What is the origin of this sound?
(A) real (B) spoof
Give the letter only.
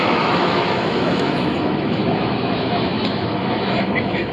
B